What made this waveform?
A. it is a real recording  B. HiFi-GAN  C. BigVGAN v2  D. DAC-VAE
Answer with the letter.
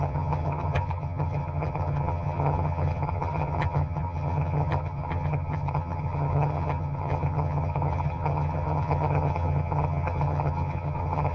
B